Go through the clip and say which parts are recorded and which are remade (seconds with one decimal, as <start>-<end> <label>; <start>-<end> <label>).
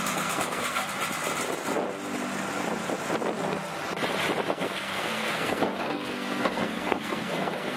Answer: 0.0-0.8 remade; 0.8-4.5 recorded; 4.5-7.8 remade